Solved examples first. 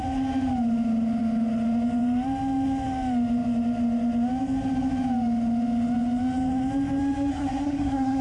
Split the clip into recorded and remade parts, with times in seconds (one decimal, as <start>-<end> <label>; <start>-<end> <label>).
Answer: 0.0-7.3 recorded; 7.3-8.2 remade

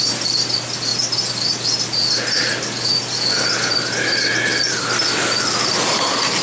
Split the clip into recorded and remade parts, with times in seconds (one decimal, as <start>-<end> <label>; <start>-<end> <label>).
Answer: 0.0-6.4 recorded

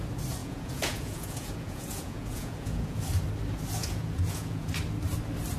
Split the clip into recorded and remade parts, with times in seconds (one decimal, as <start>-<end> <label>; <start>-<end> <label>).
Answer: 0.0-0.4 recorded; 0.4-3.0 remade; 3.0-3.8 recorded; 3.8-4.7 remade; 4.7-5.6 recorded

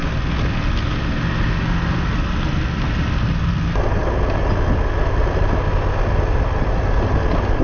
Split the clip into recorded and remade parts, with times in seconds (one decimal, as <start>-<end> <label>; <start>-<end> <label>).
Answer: 0.0-7.6 recorded

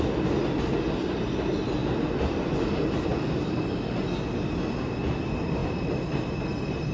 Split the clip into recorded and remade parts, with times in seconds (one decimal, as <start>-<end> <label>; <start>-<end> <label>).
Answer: 0.0-1.8 recorded; 1.8-2.6 remade; 2.6-3.1 recorded; 3.1-4.0 remade; 4.0-6.9 recorded

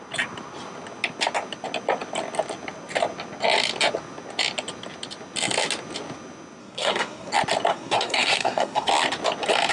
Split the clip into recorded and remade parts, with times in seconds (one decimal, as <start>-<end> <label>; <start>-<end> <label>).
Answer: 0.0-6.6 recorded; 6.6-7.3 remade; 7.3-7.7 recorded; 7.7-8.9 remade; 8.9-9.7 recorded

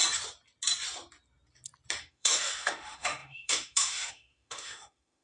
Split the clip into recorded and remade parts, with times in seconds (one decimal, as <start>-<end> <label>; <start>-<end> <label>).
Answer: 0.0-2.0 recorded; 2.0-5.2 remade